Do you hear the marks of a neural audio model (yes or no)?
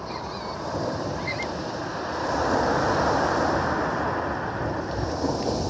no